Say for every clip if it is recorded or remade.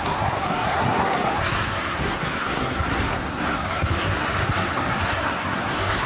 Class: remade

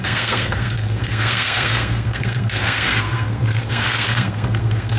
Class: remade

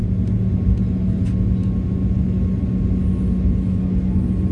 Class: recorded